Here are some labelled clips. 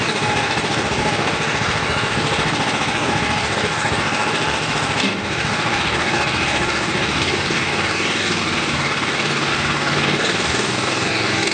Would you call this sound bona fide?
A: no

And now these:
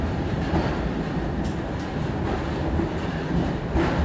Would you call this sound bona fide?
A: yes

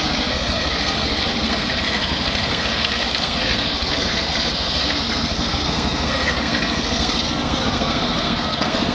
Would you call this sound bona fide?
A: no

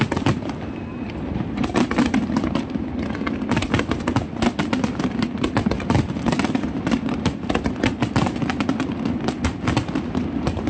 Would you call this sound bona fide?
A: yes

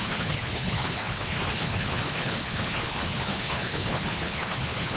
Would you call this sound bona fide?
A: no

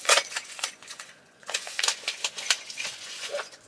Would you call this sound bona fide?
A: no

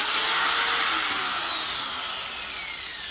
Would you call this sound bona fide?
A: yes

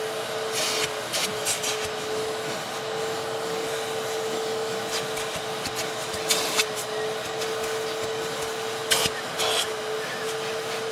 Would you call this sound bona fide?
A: yes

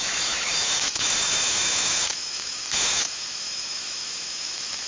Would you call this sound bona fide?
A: no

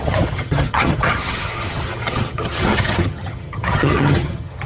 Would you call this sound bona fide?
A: no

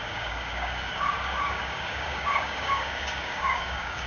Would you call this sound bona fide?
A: no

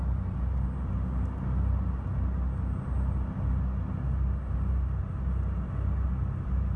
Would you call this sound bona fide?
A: yes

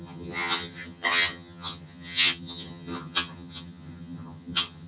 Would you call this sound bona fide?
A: no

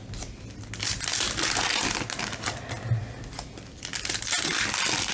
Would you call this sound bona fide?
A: yes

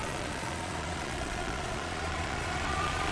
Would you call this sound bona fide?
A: no